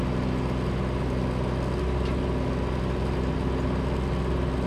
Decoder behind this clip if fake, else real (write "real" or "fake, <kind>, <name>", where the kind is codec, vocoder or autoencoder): real